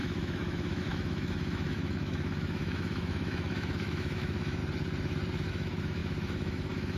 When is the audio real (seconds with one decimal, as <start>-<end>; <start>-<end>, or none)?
4.6-5.5